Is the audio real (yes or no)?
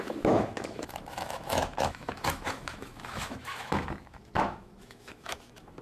no